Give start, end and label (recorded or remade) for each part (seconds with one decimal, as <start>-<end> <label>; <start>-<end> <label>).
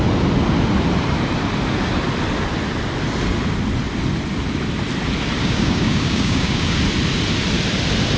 0.0-5.4 recorded; 5.4-6.8 remade; 6.8-8.2 recorded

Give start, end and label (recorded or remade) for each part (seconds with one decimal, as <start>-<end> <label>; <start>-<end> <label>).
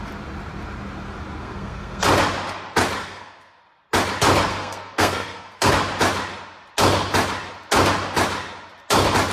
0.0-1.4 recorded; 1.4-2.0 remade; 2.0-3.0 recorded; 3.0-3.6 remade; 3.6-4.5 recorded; 4.5-5.7 remade; 5.7-9.3 recorded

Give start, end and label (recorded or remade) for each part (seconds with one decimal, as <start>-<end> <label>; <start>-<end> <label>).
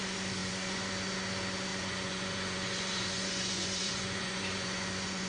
0.0-0.4 recorded; 0.4-0.9 remade; 0.9-1.7 recorded; 1.7-5.3 remade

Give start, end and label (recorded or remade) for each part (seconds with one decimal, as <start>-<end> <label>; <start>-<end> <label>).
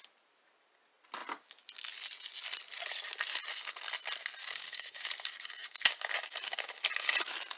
0.0-4.4 recorded; 4.4-5.1 remade; 5.1-7.6 recorded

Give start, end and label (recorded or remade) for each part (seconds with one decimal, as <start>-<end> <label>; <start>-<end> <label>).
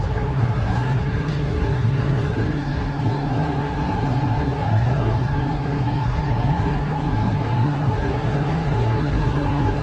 0.0-9.8 remade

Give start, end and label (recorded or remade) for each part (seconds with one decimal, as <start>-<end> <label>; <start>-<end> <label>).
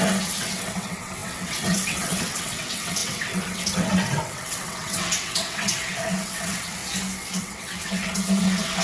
0.0-6.8 remade; 6.8-7.3 recorded; 7.3-8.8 remade